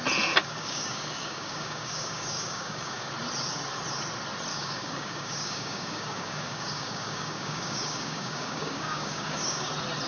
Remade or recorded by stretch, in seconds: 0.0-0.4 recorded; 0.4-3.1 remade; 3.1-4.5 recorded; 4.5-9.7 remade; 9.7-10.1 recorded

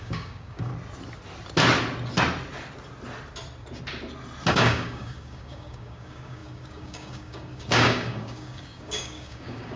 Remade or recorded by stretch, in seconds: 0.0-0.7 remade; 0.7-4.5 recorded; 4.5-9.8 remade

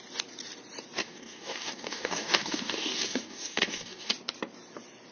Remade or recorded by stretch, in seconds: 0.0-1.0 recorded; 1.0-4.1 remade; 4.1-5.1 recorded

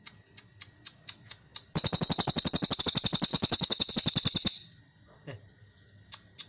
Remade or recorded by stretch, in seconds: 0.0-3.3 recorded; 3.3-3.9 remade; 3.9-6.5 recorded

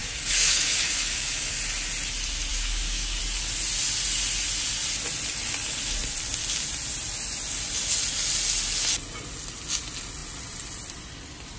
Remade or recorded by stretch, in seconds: 0.0-1.6 remade; 1.6-2.5 recorded; 2.5-3.2 remade; 3.2-11.6 recorded

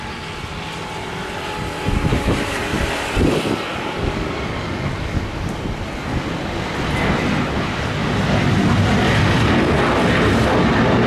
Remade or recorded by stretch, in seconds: 0.0-2.1 recorded; 2.1-2.8 remade; 2.8-3.7 recorded; 3.7-5.3 remade; 5.3-11.1 recorded